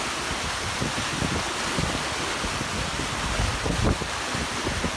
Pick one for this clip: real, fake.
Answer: real